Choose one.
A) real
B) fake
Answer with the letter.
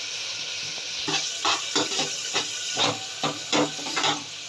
A